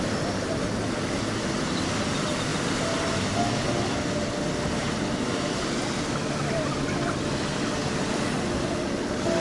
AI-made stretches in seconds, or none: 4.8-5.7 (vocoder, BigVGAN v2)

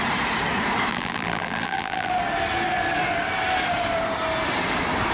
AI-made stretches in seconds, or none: 0.9-2.1 (vocoder, BigVGAN v2)

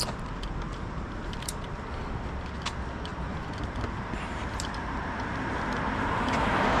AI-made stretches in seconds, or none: 0.7-1.7 (vocoder, BigVGAN v2); 3.1-4.4

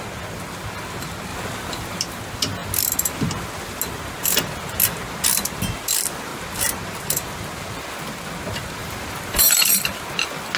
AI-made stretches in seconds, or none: 8.8-9.7 (vocoder, BigVGAN v2)

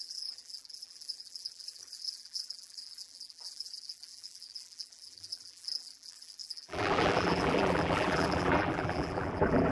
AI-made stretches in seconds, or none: 0.0-9.7 (vocoder, BigVGAN v2)